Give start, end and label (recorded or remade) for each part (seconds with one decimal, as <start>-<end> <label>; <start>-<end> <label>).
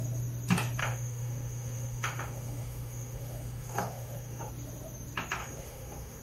0.0-0.8 recorded; 0.8-4.5 remade; 4.5-5.4 recorded; 5.4-6.2 remade